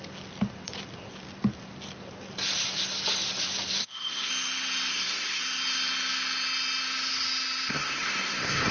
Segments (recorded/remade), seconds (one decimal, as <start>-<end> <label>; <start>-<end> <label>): 0.0-3.8 recorded; 3.8-4.3 remade; 4.3-4.9 recorded; 4.9-5.4 remade; 5.4-7.7 recorded; 7.7-8.7 remade